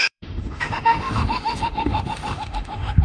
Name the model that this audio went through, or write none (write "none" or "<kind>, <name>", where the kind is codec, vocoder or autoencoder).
autoencoder, DAC-VAE